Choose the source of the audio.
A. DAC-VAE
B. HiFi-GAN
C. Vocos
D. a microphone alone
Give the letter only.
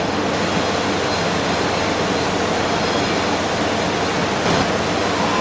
D